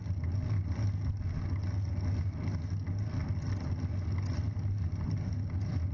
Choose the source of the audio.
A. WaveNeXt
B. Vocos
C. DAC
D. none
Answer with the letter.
D